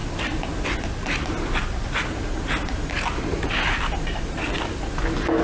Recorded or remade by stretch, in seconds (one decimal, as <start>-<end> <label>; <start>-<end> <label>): 0.0-5.4 recorded